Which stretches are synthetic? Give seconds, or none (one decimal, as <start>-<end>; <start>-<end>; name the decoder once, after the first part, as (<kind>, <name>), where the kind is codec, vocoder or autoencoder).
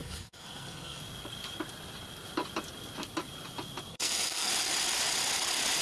0.0-1.0 (codec, SNAC); 3.9-4.5